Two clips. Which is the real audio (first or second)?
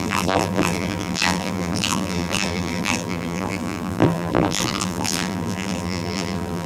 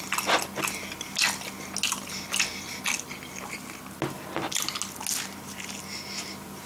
second